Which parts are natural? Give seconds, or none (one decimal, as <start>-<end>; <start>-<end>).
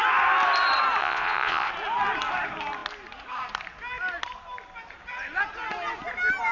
0.0-1.0; 1.7-6.5